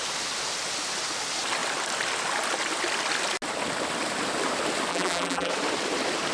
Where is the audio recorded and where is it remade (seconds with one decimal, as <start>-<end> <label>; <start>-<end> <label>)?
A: 0.0-4.9 recorded; 4.9-5.5 remade; 5.5-6.3 recorded